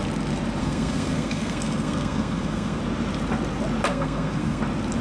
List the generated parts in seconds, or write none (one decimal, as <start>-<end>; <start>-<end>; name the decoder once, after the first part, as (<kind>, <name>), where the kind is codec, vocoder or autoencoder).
0.6-2.8 (codec, SNAC); 3.9-4.6

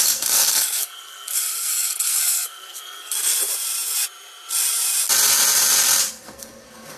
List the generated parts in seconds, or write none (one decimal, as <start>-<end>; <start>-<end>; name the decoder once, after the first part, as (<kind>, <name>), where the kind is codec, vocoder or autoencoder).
0.0-3.5 (codec, SNAC); 6.1-7.0

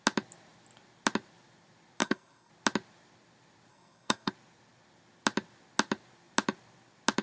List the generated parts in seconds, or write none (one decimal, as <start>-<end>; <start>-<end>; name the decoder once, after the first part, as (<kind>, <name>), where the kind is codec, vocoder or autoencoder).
2.0-2.5 (codec, SNAC); 3.7-4.3

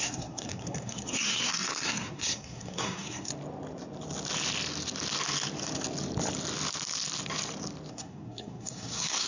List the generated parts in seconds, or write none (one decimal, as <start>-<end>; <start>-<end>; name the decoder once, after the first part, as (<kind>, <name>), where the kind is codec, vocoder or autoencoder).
0.0-3.3 (codec, SNAC); 7.9-9.3

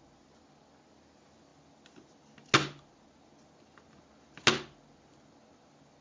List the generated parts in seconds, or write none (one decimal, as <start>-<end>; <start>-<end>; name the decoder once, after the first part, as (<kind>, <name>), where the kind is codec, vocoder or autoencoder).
none

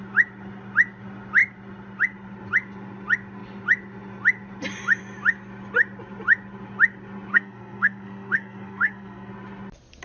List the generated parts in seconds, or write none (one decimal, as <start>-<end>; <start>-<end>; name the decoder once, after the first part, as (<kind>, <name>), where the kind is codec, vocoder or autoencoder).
7.3-9.3 (codec, SNAC)